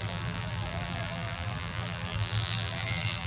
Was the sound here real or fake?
fake